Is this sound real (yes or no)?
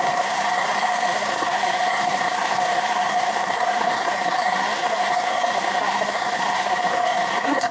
no